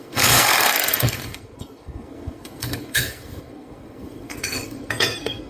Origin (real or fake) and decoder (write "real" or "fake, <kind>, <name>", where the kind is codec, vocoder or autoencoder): fake, codec, SNAC